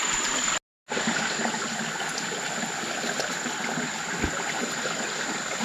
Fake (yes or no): no